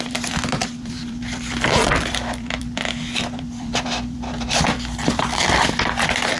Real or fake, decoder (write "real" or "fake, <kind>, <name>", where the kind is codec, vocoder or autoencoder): fake, vocoder, BigVGAN v2